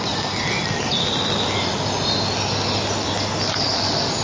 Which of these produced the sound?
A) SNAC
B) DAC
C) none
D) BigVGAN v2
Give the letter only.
C